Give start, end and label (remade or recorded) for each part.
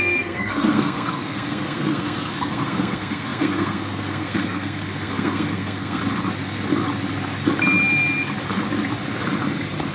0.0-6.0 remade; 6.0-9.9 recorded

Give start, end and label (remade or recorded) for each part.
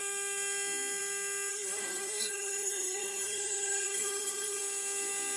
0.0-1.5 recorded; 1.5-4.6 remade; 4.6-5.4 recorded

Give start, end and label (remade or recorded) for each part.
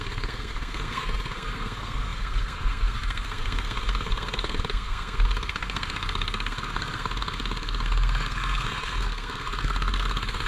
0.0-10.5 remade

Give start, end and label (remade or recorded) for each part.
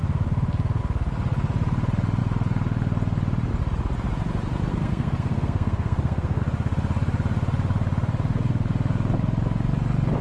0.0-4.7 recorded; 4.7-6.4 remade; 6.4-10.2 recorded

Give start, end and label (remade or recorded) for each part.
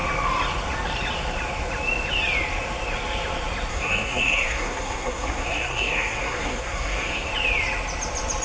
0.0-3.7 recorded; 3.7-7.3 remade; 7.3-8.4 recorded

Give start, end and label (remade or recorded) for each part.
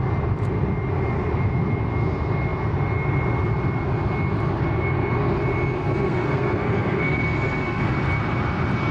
0.0-5.8 recorded; 5.8-7.8 remade; 7.8-8.9 recorded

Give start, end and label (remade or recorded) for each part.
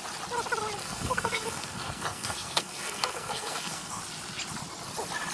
0.0-0.8 recorded; 0.8-4.0 remade; 4.0-5.3 recorded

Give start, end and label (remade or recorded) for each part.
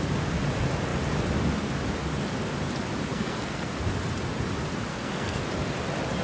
0.0-3.1 recorded; 3.1-3.7 remade; 3.7-4.9 recorded; 4.9-5.4 remade; 5.4-6.2 recorded